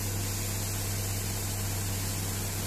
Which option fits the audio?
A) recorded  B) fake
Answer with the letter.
A